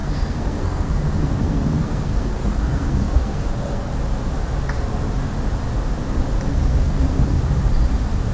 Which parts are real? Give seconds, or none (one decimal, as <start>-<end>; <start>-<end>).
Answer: 3.9-6.5; 7.4-8.3

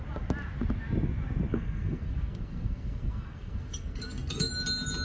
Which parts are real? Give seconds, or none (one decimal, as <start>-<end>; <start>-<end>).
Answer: 0.0-1.5; 4.5-5.0